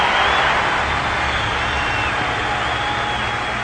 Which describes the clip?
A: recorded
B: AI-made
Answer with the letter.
A